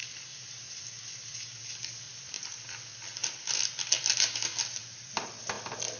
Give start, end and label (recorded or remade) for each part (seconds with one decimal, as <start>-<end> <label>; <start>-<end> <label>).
0.0-6.0 recorded

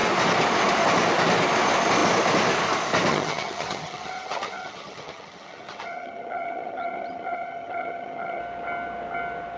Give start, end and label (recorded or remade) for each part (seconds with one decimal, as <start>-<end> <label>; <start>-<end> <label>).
0.0-3.1 recorded; 3.1-8.4 remade; 8.4-9.6 recorded